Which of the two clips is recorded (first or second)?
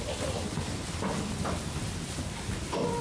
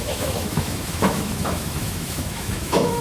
first